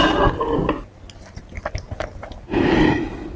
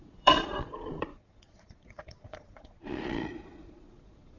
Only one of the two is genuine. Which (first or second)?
first